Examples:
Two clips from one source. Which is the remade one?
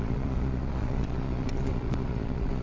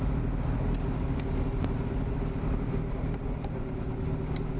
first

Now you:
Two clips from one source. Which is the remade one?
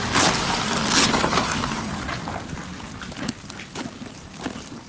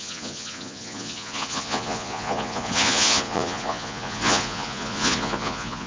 second